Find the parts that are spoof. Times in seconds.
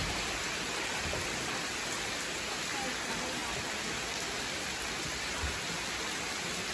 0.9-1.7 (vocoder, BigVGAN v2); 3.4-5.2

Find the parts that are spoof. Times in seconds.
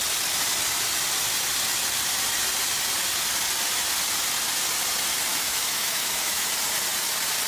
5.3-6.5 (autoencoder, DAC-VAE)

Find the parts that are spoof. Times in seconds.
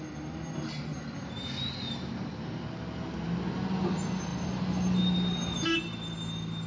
none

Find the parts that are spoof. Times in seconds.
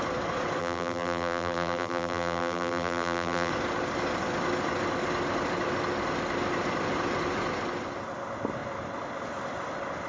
0.6-3.5 (vocoder, BigVGAN v2)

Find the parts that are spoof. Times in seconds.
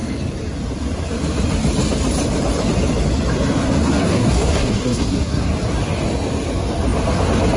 3.8-5.5 (codec, SNAC)